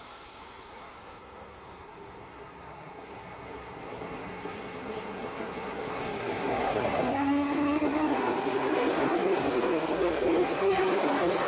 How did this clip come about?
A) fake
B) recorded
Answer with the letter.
A